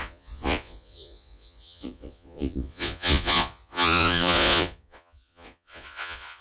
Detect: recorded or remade remade